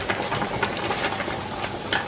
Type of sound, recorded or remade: recorded